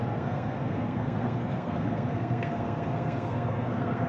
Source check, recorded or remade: remade